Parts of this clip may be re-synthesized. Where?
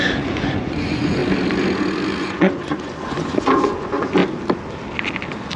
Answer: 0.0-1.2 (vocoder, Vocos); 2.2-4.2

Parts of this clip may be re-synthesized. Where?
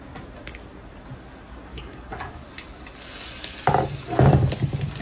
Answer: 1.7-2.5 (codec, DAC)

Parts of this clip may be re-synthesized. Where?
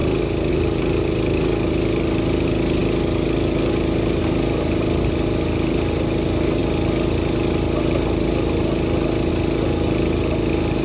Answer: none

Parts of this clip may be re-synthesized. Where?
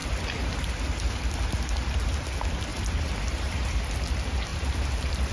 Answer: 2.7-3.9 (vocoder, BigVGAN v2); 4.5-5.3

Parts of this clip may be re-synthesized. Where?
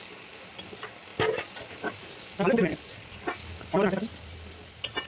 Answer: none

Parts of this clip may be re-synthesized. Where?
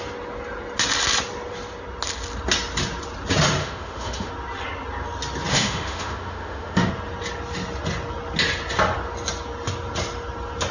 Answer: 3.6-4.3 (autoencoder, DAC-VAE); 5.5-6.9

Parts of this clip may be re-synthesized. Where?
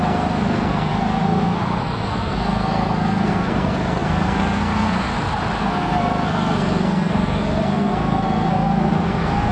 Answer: 0.0-5.1 (codec, SNAC); 5.6-9.5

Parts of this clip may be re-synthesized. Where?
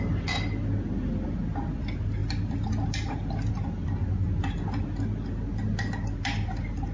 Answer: none